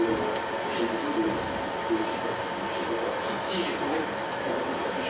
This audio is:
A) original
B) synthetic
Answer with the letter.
A